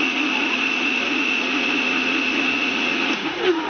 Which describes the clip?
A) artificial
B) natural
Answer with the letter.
A